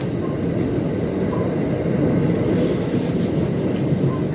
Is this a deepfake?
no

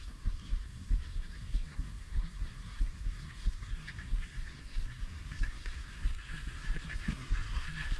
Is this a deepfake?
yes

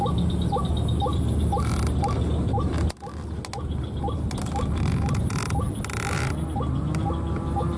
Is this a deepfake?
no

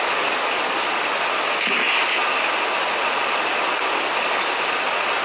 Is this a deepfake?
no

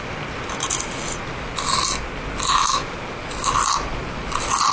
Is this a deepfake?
no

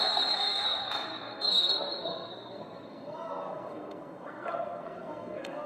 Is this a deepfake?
yes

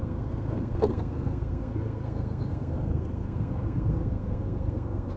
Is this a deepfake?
yes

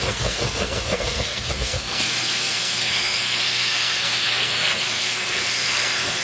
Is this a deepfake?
yes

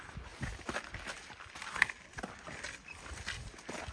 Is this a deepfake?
no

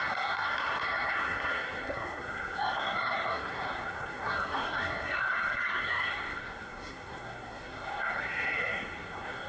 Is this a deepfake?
yes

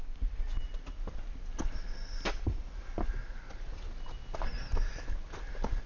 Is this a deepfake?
no